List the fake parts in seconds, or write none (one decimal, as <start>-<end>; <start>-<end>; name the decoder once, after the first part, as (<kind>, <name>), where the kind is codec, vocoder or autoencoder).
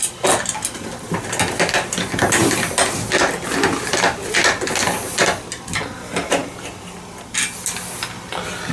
2.4-3.8 (vocoder, BigVGAN v2)